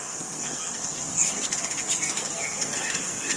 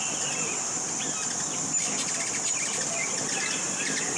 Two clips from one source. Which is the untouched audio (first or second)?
second